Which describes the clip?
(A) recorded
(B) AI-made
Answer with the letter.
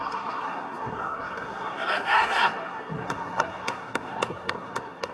B